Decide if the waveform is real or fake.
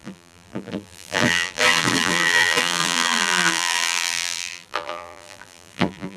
fake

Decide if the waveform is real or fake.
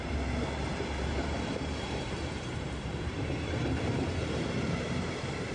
fake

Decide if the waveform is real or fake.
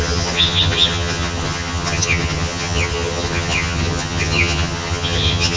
fake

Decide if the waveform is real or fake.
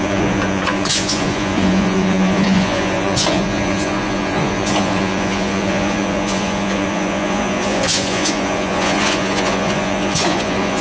fake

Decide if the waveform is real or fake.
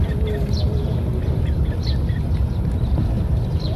real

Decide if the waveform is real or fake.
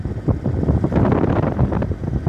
real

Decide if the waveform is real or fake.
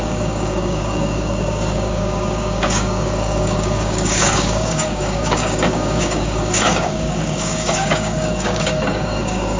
fake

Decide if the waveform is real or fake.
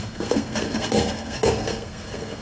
fake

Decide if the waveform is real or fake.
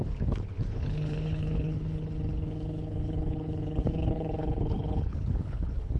fake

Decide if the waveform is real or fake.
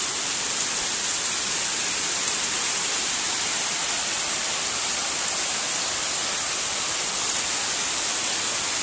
fake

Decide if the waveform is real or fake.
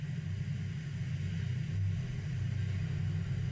real